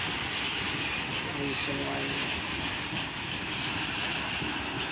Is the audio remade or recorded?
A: recorded